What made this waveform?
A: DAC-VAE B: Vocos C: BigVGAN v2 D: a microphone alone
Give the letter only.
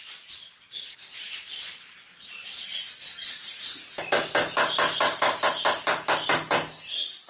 D